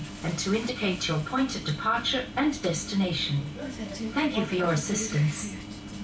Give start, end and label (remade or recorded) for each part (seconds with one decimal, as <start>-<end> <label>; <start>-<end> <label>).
0.0-0.7 recorded; 0.7-6.0 remade